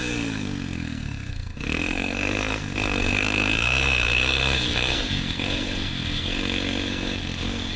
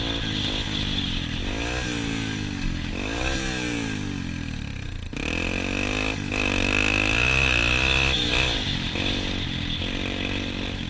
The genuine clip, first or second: second